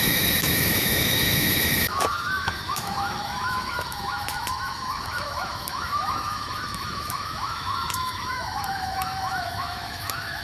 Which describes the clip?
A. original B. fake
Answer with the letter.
B